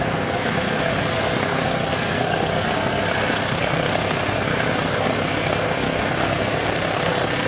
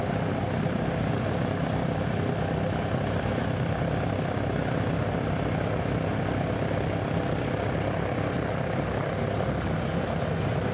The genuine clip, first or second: second